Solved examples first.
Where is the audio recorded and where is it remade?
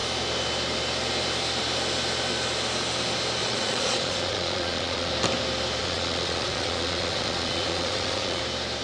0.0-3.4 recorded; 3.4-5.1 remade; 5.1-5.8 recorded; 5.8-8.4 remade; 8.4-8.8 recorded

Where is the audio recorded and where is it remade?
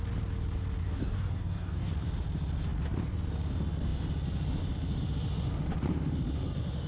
0.0-0.8 recorded; 0.8-1.9 remade; 1.9-6.9 recorded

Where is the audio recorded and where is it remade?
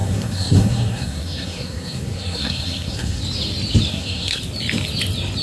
0.0-3.2 remade; 3.2-3.9 recorded; 3.9-4.4 remade; 4.4-5.4 recorded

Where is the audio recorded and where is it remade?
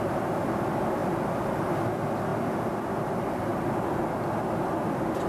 0.0-5.3 recorded